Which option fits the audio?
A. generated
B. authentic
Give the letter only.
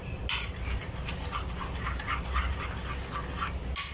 B